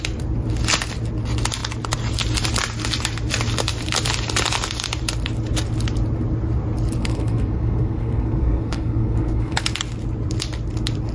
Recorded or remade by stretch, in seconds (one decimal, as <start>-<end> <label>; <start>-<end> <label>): 0.0-7.0 recorded; 7.0-9.6 remade; 9.6-11.1 recorded